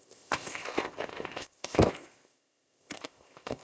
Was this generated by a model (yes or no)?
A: yes